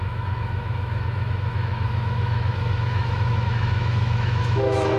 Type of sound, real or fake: fake